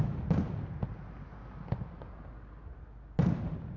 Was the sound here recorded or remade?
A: recorded